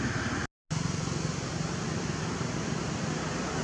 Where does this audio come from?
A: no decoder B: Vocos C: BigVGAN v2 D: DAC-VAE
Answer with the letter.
A